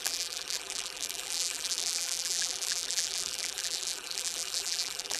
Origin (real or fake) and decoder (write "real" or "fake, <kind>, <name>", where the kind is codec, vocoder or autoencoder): fake, vocoder, BigVGAN v2